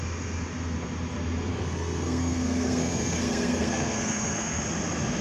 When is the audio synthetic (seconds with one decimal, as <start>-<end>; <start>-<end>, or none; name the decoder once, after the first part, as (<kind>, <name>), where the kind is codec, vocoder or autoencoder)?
1.5-4.6 (codec, SNAC)